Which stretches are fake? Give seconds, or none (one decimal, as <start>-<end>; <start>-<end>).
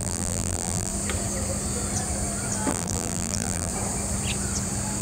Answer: 0.0-0.9; 2.7-3.7